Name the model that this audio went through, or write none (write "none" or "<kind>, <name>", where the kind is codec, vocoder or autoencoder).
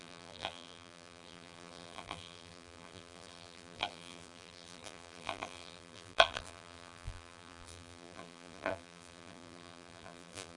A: vocoder, BigVGAN v2